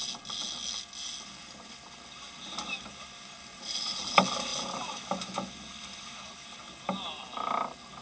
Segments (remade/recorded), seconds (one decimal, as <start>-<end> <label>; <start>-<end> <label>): 0.0-3.5 recorded; 3.5-4.0 remade; 4.0-8.0 recorded